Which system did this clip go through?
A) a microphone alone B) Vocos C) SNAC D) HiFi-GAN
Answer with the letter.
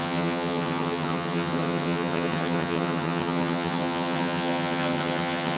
D